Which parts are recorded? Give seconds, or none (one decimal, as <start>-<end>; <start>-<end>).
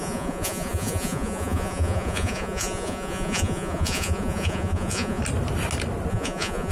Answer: 5.2-6.1